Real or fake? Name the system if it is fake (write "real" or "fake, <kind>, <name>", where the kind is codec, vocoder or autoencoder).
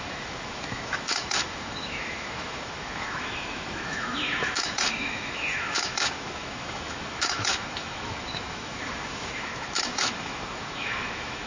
fake, autoencoder, DAC-VAE